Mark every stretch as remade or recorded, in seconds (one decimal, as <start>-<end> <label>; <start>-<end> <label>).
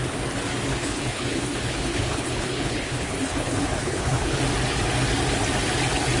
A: 0.0-0.7 recorded; 0.7-4.4 remade; 4.4-6.2 recorded